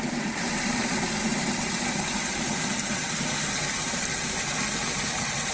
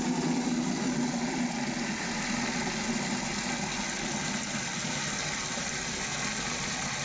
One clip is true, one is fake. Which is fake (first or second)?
first